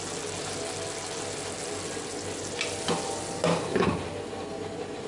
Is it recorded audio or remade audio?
recorded